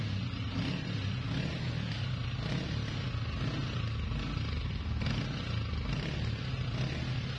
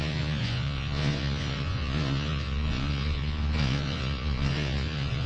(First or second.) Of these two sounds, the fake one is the second